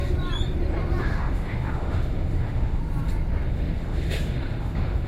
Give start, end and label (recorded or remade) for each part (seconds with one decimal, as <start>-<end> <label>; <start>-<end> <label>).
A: 0.0-1.0 recorded; 1.0-2.8 remade; 2.8-3.5 recorded; 3.5-5.1 remade